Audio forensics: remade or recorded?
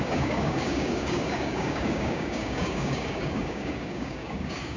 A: remade